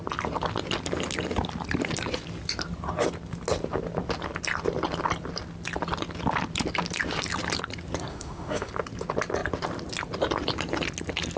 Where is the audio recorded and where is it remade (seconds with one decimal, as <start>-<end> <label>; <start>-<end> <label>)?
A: 0.0-8.1 recorded; 8.1-8.7 remade; 8.7-11.4 recorded